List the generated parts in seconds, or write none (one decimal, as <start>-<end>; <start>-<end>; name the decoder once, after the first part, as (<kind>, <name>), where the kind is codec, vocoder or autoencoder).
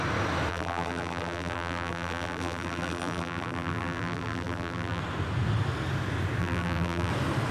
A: 0.5-5.0 (vocoder, BigVGAN v2); 6.4-7.1